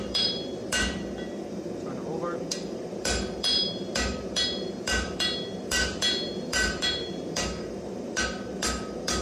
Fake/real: fake